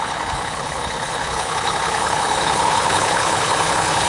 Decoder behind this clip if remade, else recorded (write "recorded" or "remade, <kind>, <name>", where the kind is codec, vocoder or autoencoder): remade, codec, HILCodec